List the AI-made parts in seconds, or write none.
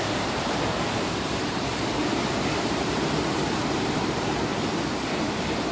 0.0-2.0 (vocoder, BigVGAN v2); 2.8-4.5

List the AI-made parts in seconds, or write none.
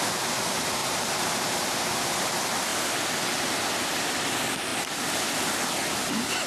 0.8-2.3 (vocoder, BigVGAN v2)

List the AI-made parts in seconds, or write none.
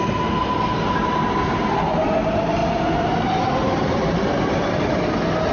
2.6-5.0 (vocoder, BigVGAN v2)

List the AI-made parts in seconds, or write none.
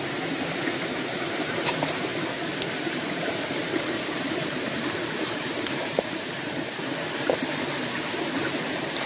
0.0-2.1 (vocoder, BigVGAN v2); 2.9-9.1